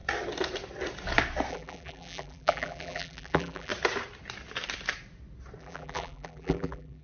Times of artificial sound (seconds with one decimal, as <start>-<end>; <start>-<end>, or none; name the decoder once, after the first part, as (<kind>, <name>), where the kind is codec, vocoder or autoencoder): 1.5-3.7 (vocoder, BigVGAN v2); 5.6-7.0